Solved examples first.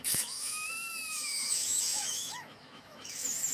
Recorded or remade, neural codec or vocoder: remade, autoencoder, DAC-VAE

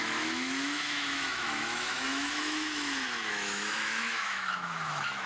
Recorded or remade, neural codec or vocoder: remade, autoencoder, DAC-VAE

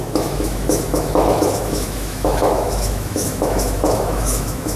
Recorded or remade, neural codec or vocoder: remade, autoencoder, DAC-VAE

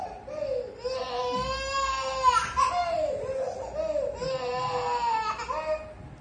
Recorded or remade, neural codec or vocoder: recorded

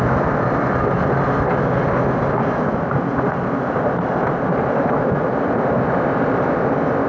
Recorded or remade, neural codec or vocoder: recorded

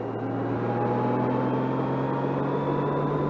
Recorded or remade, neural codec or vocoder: recorded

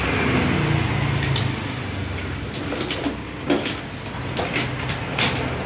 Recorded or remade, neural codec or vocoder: recorded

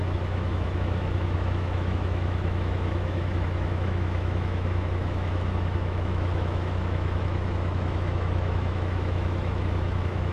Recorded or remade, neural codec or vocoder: remade, autoencoder, DAC-VAE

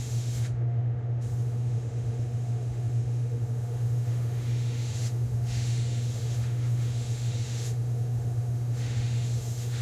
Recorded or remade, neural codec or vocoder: remade, autoencoder, DAC-VAE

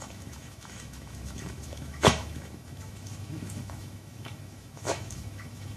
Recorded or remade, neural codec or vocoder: remade, autoencoder, DAC-VAE